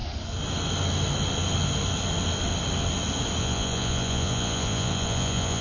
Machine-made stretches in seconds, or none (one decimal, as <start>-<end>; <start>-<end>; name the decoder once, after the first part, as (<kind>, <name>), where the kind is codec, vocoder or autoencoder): 3.4-5.6 (vocoder, Vocos)